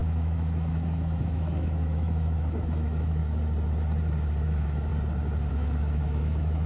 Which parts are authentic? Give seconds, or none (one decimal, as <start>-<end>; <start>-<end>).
3.2-4.4; 4.9-5.5

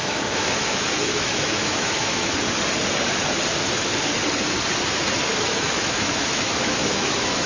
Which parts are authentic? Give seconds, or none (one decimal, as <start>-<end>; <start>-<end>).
2.4-5.3

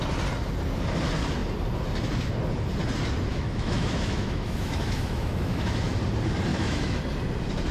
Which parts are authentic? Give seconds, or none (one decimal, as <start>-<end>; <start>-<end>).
0.0-3.3; 5.9-6.5; 7.0-7.7

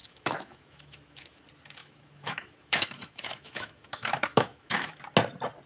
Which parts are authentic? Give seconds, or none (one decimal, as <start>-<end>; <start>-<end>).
1.4-1.8; 5.0-5.7

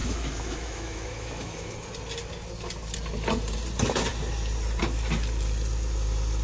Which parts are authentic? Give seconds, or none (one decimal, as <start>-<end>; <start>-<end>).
1.7-6.4

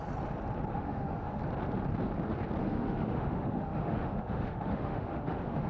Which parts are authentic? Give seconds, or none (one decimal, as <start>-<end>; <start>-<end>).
0.0-0.7; 1.4-2.6

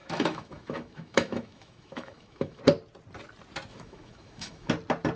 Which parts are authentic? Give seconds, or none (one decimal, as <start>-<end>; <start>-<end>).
2.6-3.7; 4.7-5.2